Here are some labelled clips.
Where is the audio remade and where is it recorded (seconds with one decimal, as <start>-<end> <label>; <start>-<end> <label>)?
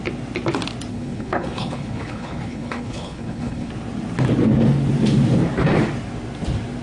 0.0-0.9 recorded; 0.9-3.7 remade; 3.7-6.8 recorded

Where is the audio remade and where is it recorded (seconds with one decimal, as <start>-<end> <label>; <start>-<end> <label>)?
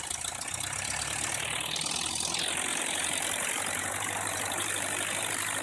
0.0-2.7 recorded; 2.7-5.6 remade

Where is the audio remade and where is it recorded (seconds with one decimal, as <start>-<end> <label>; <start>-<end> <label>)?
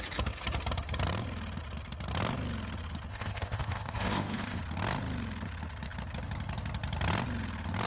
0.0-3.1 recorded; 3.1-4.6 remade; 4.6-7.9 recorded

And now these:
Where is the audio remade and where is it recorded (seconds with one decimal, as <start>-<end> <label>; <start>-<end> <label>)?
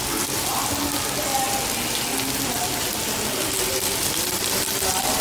0.0-5.2 recorded